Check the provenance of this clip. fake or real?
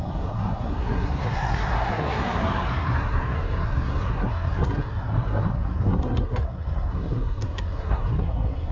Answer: fake